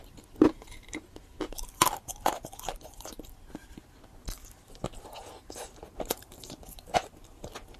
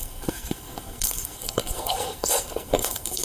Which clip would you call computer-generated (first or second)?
second